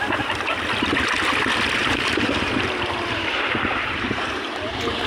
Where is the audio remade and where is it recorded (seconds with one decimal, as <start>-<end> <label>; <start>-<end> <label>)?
0.0-1.8 recorded; 1.8-5.1 remade